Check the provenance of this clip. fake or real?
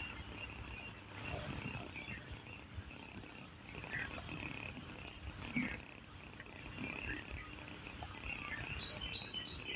real